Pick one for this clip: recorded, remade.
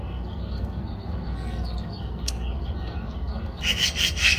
remade